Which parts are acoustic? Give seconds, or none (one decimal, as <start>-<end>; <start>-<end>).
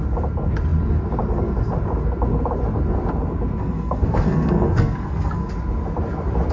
0.0-3.6; 5.5-6.5